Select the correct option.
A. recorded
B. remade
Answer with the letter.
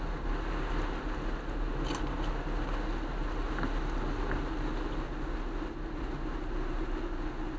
A